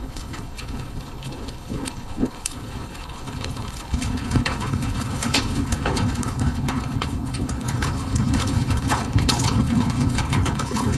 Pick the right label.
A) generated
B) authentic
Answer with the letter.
A